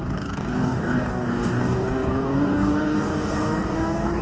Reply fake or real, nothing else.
fake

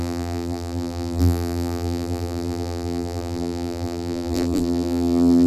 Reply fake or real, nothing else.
fake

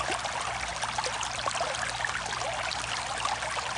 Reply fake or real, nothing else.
real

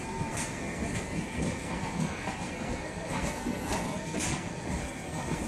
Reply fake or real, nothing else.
fake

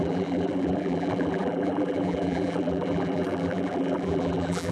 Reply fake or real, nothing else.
fake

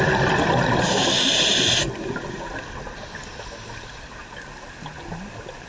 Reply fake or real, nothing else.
real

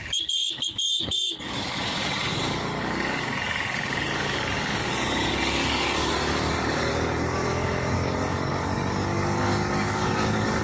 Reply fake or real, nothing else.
fake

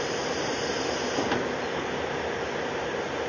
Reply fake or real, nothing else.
real